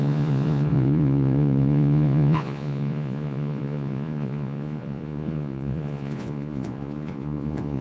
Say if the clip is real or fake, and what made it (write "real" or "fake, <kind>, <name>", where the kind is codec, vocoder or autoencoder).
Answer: fake, vocoder, Vocos